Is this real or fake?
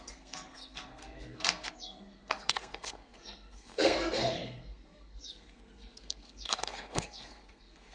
fake